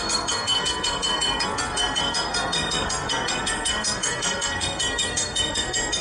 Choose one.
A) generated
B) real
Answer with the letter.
A